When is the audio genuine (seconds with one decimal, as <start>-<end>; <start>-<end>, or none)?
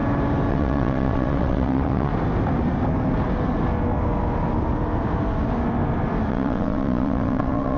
0.0-0.5; 2.1-6.3